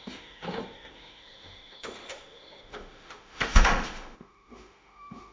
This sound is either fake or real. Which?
fake